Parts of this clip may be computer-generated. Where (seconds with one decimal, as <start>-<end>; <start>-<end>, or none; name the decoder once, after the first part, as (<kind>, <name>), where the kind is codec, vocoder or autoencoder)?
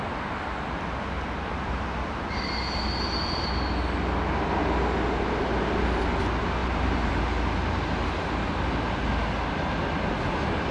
6.6-7.2 (vocoder, BigVGAN v2)